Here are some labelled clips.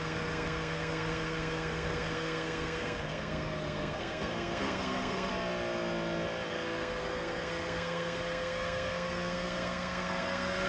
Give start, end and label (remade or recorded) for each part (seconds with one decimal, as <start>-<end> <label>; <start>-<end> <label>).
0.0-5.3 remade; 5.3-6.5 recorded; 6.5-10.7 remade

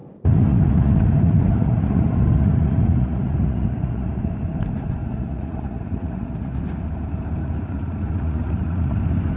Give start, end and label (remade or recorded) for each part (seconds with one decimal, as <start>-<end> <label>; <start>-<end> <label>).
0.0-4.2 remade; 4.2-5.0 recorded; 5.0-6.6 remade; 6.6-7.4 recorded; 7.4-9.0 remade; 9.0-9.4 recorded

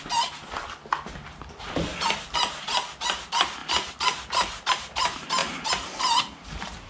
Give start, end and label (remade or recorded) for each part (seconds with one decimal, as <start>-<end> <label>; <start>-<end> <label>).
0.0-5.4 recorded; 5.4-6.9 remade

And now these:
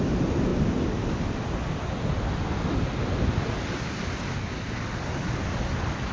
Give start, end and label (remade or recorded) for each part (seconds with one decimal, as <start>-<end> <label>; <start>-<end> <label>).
0.0-6.1 recorded